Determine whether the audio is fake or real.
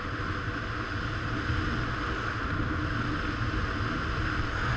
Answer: real